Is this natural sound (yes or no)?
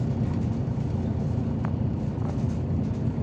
yes